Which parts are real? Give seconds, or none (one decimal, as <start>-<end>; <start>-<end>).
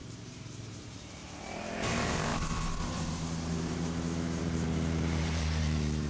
2.3-4.4